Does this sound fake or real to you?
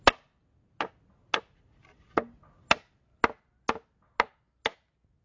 real